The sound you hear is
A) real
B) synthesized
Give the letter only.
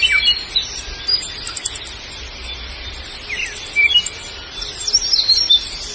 A